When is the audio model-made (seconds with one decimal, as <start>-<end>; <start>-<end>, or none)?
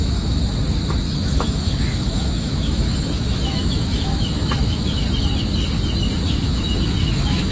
0.0-0.4; 1.0-5.0; 6.3-7.5